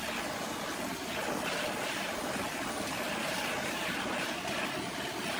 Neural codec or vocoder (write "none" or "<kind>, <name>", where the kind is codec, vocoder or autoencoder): none